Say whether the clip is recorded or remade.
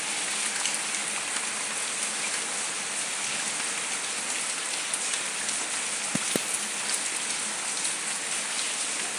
recorded